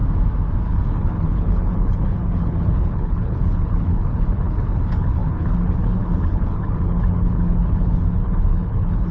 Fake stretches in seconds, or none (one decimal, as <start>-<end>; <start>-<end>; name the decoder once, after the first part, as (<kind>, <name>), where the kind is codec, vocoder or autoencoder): 0.6-9.1 (codec, HILCodec)